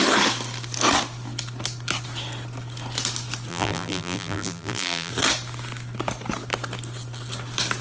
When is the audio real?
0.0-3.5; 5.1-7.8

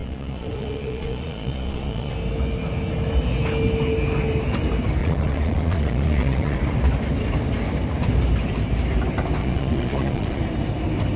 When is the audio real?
2.1-5.0; 6.6-9.4; 10.4-11.2

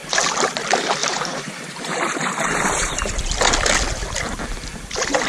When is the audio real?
0.0-1.0; 3.1-5.3

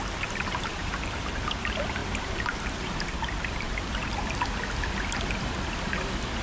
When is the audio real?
0.0-0.7; 1.3-2.0; 4.2-6.4

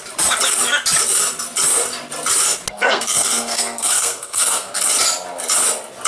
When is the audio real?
0.0-2.7; 4.8-6.1